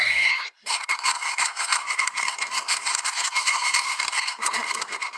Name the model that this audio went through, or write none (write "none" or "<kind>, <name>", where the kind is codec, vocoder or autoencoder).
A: codec, SNAC